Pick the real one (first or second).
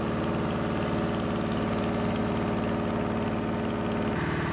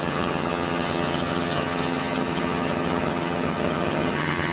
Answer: first